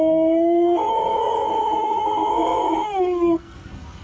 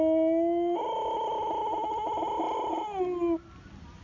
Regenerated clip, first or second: first